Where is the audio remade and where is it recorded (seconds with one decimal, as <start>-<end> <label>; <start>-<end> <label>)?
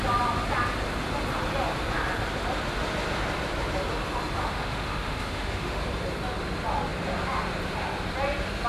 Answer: 0.0-4.4 recorded; 4.4-5.8 remade; 5.8-8.7 recorded